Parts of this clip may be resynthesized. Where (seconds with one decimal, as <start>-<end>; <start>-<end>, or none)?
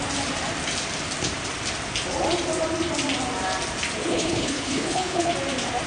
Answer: 4.0-5.3